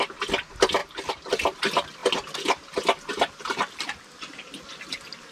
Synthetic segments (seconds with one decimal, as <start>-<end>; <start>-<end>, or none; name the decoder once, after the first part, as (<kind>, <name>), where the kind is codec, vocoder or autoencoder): 0.8-1.3 (vocoder, BigVGAN v2)